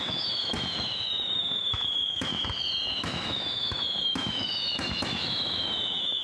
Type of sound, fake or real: fake